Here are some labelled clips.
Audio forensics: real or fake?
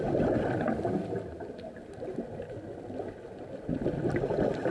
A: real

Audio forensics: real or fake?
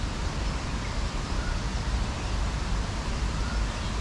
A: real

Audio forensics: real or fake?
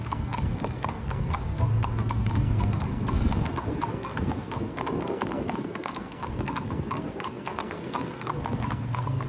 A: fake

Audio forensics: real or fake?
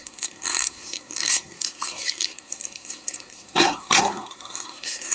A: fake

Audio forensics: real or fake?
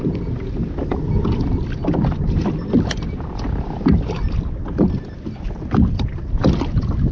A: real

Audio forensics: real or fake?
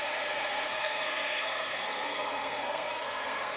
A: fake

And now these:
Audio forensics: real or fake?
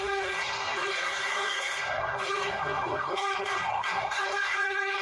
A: fake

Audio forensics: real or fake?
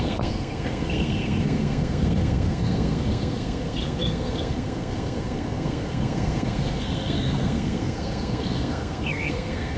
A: fake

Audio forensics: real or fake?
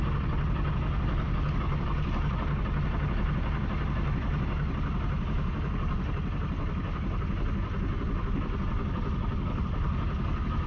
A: real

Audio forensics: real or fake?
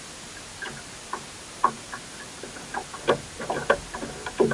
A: real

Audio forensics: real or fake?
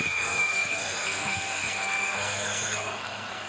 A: fake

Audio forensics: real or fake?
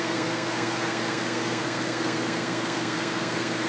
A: fake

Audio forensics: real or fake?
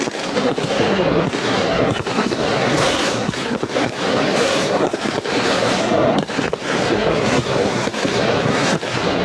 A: fake